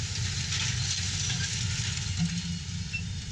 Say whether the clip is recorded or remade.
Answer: recorded